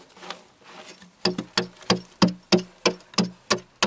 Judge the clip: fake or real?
real